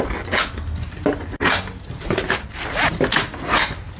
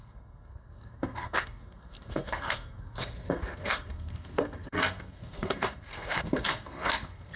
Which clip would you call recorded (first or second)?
first